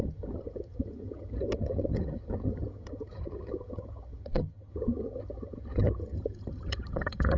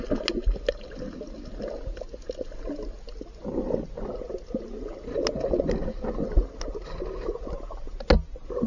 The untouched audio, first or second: second